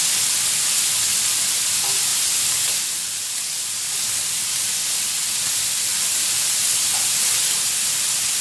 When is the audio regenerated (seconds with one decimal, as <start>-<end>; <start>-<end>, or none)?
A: none